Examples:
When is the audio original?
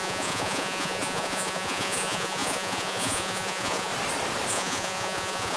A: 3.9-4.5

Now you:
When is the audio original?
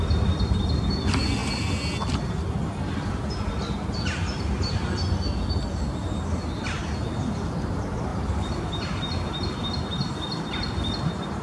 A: 0.0-8.1; 9.8-11.4